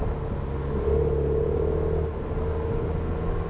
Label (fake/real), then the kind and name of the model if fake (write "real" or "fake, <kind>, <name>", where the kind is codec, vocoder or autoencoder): real